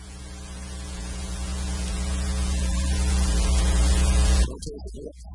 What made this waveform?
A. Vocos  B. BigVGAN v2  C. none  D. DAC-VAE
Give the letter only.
A